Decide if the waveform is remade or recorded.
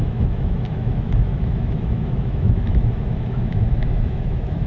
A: remade